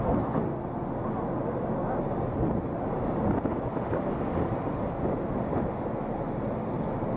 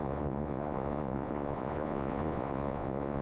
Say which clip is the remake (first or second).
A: second